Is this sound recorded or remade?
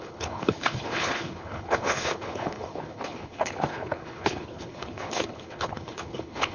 remade